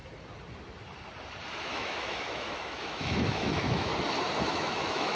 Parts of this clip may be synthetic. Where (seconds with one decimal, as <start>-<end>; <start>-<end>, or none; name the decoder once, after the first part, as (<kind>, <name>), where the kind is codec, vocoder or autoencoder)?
1.6-3.9 (autoencoder, DAC-VAE); 4.5-5.2